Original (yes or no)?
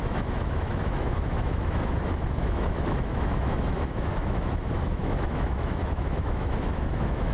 no